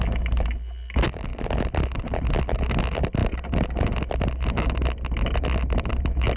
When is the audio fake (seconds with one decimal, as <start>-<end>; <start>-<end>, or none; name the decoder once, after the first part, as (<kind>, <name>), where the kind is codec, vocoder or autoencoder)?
none